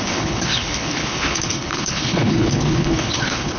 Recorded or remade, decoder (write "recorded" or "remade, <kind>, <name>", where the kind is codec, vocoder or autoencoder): remade, codec, HILCodec